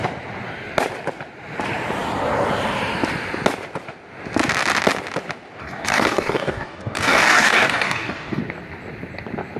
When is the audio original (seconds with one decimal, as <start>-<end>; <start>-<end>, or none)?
0.0-5.6; 8.4-9.6